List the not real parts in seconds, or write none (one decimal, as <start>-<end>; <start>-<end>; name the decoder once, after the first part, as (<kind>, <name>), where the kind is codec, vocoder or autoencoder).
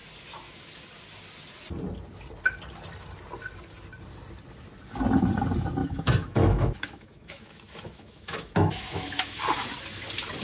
5.8-9.4 (autoencoder, DAC-VAE)